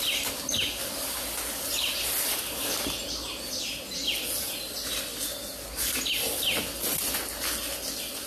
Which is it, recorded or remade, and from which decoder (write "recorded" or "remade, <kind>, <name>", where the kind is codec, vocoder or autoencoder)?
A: recorded